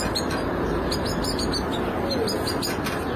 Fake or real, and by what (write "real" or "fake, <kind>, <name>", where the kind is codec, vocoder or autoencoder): real